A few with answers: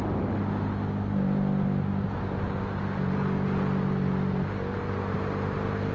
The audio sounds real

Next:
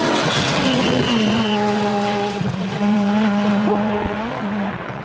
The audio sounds fake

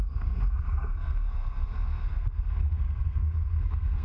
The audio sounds fake